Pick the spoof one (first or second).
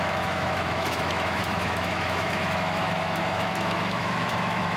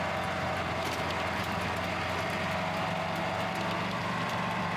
first